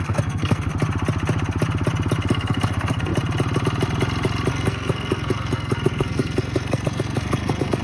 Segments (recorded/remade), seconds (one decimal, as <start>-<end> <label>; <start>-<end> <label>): 0.0-0.7 remade; 0.7-2.3 recorded; 2.3-3.1 remade; 3.1-4.5 recorded; 4.5-7.8 remade